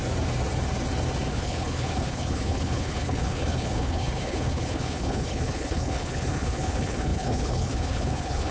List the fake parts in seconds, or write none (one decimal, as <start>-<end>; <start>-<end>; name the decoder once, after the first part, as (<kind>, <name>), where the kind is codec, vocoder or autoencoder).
1.3-8.5 (codec, HILCodec)